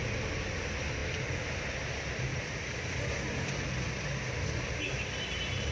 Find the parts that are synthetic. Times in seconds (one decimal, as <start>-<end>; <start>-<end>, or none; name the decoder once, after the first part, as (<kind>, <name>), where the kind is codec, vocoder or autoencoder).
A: none